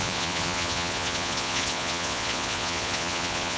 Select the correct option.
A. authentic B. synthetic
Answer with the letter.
B